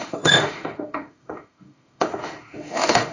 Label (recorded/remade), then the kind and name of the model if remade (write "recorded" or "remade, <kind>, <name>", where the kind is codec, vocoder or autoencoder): remade, autoencoder, DAC-VAE